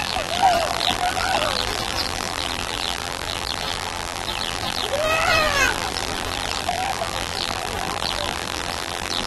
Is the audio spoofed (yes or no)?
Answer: yes